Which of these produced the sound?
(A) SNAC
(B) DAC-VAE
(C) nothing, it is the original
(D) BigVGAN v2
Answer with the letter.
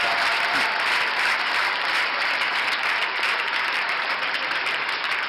D